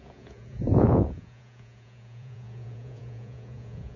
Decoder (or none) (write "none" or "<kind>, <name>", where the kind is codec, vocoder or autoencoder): vocoder, Vocos